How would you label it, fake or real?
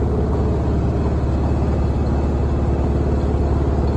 real